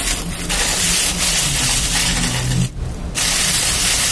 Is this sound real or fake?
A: real